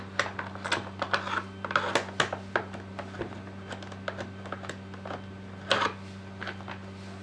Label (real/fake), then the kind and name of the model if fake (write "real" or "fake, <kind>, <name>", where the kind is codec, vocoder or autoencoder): real